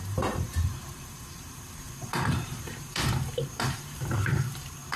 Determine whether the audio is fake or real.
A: fake